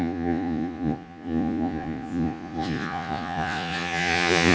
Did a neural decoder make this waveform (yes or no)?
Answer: yes